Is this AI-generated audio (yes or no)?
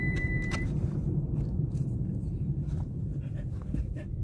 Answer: yes